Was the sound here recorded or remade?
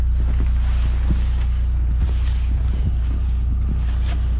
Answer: recorded